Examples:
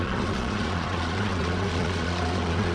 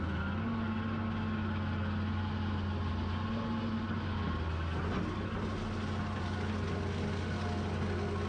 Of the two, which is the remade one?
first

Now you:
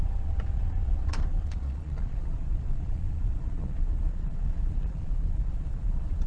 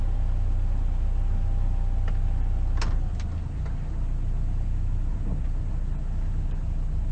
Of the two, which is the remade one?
first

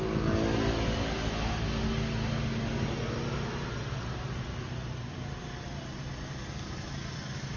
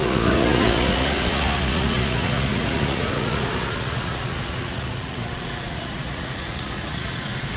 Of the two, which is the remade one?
second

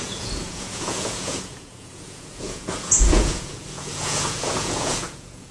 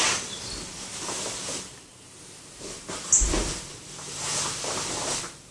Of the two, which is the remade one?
first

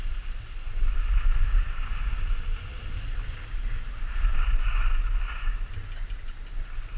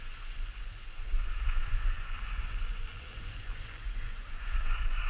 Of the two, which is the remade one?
second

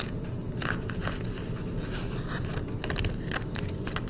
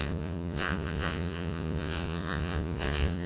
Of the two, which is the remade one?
second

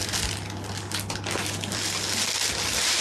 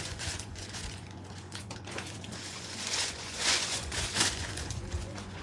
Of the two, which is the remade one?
second